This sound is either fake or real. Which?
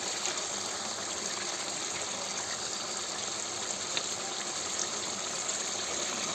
real